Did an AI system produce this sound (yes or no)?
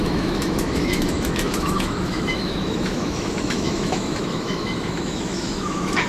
yes